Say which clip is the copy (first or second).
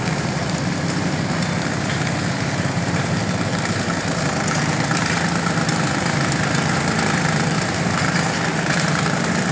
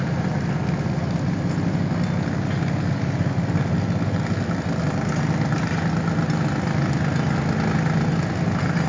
first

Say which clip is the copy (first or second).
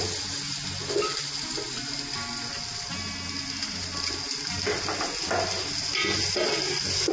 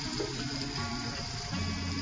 second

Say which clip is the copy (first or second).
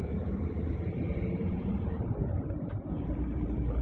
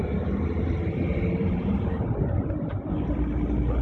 first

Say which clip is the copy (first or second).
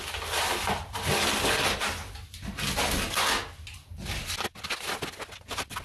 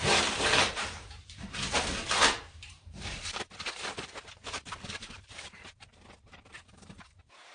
second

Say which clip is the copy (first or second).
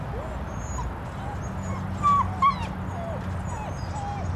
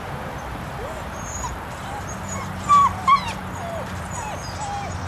second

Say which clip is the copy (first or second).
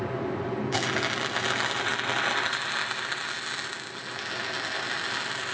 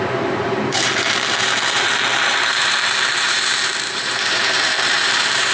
second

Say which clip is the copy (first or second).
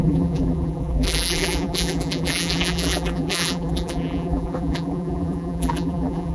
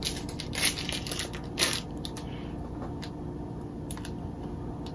first